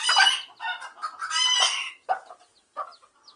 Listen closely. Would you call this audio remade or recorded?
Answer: recorded